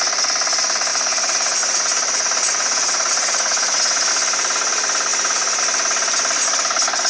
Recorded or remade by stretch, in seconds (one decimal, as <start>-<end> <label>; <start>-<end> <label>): 0.0-0.9 recorded; 0.9-4.1 remade; 4.1-5.1 recorded; 5.1-5.6 remade; 5.6-7.1 recorded